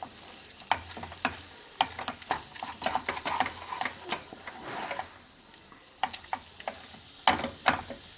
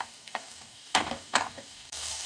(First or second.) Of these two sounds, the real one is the first